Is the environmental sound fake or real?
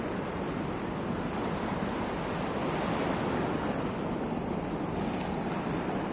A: real